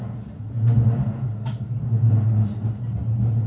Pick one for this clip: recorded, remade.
recorded